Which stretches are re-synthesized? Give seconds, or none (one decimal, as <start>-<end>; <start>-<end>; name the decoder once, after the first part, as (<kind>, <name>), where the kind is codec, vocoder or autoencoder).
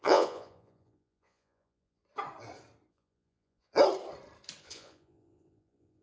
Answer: 0.0-2.0 (vocoder, Vocos); 2.9-3.7; 4.6-6.0